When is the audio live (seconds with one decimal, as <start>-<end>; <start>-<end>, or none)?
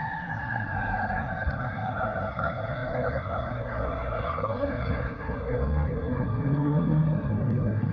none